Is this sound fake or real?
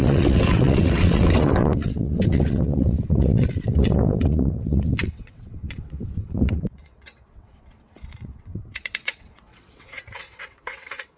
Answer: fake